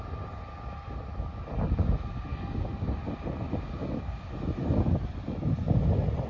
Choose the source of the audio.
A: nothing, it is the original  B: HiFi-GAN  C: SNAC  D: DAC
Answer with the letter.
A